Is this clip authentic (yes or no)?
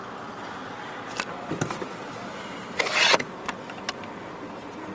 yes